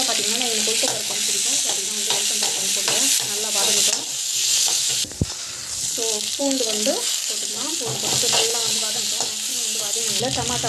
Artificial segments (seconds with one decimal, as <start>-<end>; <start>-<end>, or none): 4.1-4.9; 6.4-7.7; 8.5-9.0; 9.5-10.0